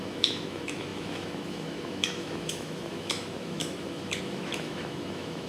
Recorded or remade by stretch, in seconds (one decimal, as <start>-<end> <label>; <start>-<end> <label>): 0.0-5.5 remade